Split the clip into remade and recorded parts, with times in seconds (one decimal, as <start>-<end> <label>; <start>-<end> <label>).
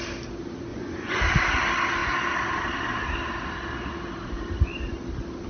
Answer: 0.0-0.7 recorded; 0.7-1.2 remade; 1.2-5.5 recorded